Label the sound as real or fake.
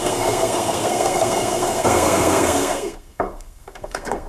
fake